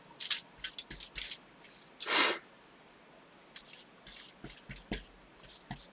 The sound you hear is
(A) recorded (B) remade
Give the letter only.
A